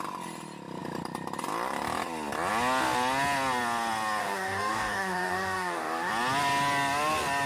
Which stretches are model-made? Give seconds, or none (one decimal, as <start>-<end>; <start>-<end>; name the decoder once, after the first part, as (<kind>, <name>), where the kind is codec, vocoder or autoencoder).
4.2-6.1 (codec, DAC)